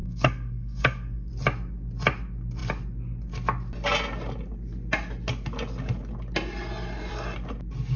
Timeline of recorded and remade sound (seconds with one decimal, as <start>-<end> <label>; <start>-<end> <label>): 0.0-1.3 remade; 1.3-8.0 recorded